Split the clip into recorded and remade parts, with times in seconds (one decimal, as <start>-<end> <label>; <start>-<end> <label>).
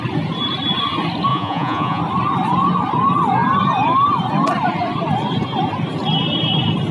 0.0-1.3 recorded; 1.3-2.0 remade; 2.0-6.9 recorded